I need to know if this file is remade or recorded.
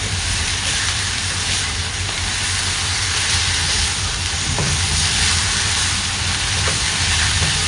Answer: remade